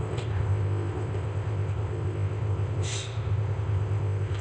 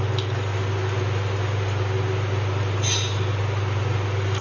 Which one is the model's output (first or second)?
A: first